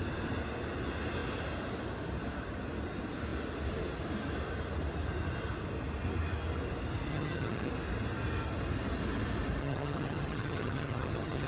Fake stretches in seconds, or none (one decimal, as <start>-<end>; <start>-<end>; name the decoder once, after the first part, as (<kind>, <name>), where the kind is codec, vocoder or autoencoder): 7.1-7.7 (vocoder, HiFi-GAN); 9.6-11.5